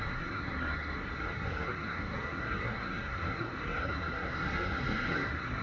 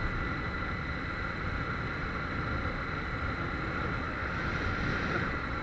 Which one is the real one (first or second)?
second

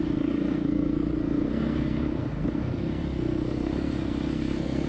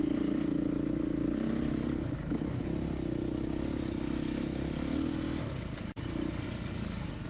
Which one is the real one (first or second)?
second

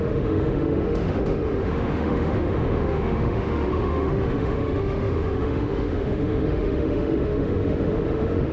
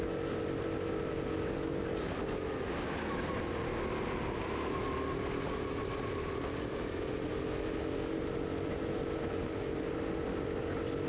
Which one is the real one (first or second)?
second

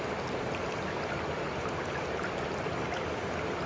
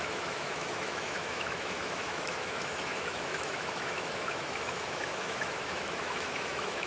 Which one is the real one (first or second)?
first